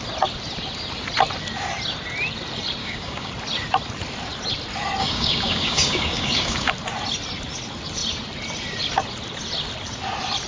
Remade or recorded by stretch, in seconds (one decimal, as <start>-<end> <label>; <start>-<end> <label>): 0.0-2.8 recorded; 2.8-3.3 remade; 3.3-5.0 recorded; 5.0-6.7 remade; 6.7-10.5 recorded